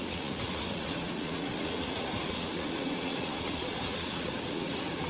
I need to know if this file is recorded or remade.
remade